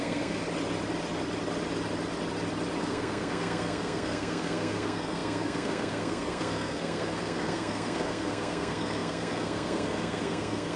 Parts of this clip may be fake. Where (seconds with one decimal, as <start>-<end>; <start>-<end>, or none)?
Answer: 0.0-0.4; 2.8-10.8